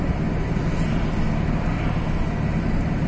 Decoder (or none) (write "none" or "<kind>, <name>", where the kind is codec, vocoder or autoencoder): none